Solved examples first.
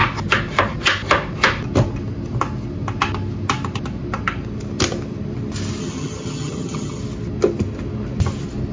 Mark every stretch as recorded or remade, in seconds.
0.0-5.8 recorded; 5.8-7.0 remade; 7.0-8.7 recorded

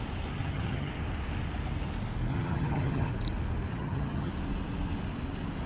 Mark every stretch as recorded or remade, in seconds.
0.0-0.4 recorded; 0.4-0.9 remade; 0.9-2.3 recorded; 2.3-3.1 remade; 3.1-3.7 recorded; 3.7-4.3 remade; 4.3-5.7 recorded

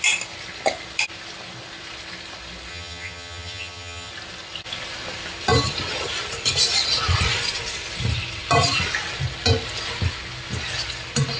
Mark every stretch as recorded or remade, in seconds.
0.0-2.7 recorded; 2.7-4.1 remade; 4.1-11.4 recorded

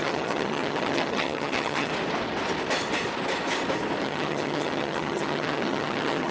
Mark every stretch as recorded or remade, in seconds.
0.0-1.9 remade; 1.9-4.0 recorded; 4.0-6.3 remade

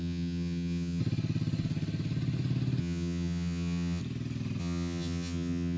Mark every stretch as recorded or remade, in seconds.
0.0-1.0 remade; 1.0-2.8 recorded; 2.8-4.0 remade; 4.0-4.6 recorded; 4.6-5.8 remade

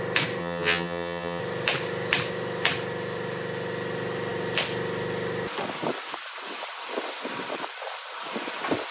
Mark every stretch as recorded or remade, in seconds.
0.0-0.4 recorded; 0.4-1.4 remade; 1.4-8.9 recorded